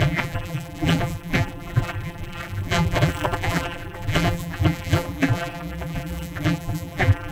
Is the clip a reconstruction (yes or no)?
yes